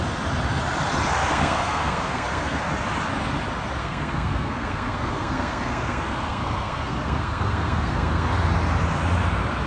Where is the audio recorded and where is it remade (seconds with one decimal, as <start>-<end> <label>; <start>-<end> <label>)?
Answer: 0.0-1.2 recorded; 1.2-2.7 remade; 2.7-3.8 recorded; 3.8-8.3 remade; 8.3-9.7 recorded